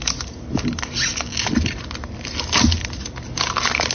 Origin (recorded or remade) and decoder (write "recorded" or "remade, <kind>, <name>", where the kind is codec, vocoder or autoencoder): recorded